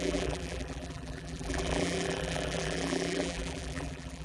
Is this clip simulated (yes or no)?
yes